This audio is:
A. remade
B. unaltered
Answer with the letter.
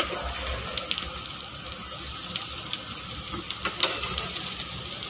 B